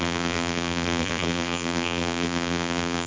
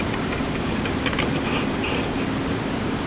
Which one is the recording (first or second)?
second